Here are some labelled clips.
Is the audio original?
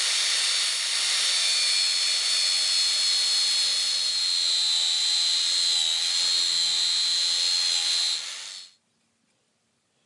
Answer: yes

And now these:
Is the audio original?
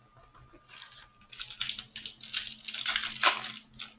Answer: yes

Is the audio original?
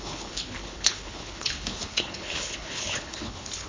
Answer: no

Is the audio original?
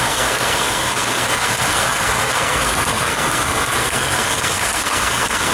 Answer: no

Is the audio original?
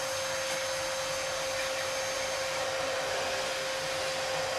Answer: yes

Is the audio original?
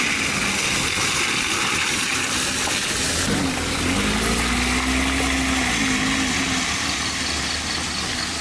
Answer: yes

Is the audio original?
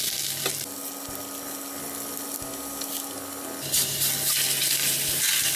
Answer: yes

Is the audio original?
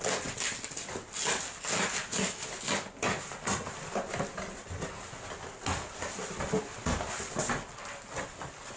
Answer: yes